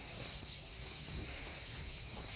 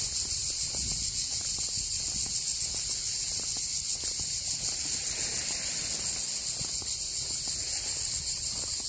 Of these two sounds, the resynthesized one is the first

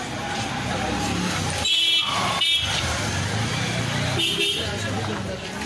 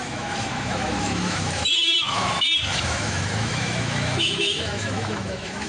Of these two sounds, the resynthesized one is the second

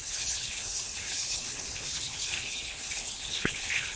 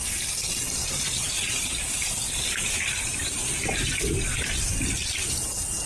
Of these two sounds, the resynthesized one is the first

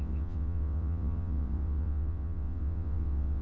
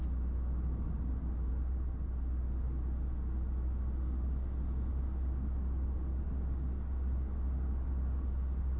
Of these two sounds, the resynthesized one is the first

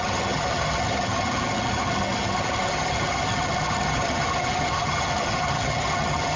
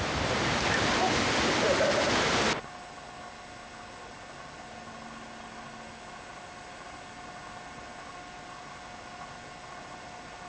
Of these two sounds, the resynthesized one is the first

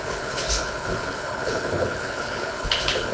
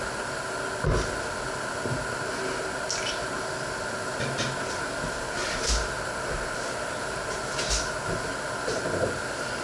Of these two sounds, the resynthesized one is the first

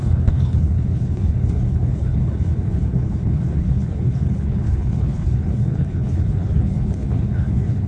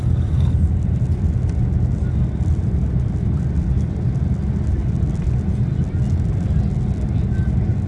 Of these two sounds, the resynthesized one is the first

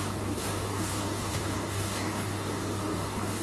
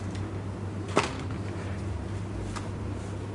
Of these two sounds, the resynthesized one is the first